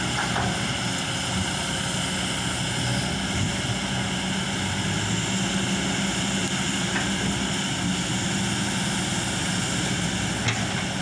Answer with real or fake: real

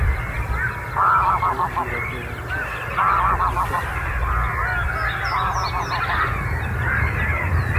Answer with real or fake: real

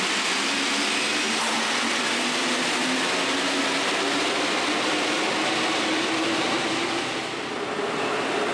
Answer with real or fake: real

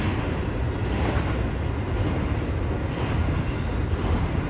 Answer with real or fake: real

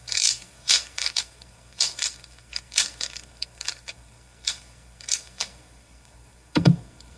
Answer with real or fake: fake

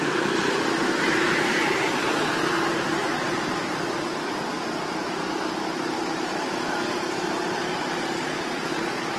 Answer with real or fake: real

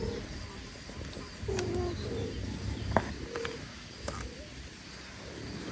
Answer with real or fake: real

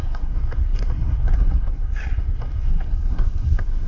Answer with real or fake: fake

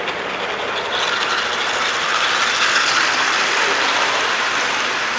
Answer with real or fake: real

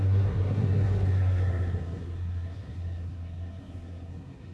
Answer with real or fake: fake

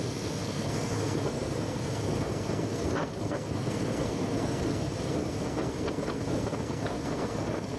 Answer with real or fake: fake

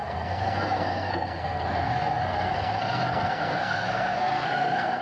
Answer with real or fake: fake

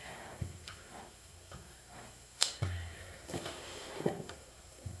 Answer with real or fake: fake